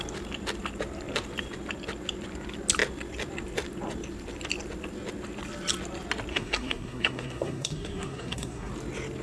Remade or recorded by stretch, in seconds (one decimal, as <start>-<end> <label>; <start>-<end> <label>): 0.0-6.3 recorded; 6.3-8.7 remade; 8.7-9.2 recorded